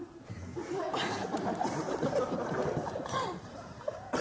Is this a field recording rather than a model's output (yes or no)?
no